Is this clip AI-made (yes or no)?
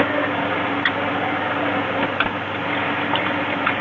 no